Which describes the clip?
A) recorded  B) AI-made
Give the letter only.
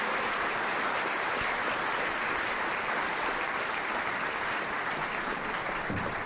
A